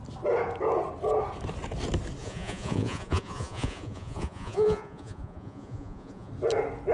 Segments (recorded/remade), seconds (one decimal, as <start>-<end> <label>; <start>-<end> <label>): 0.0-2.2 recorded; 2.2-6.3 remade; 6.3-6.9 recorded